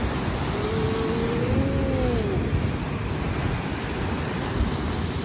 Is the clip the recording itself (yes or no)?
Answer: yes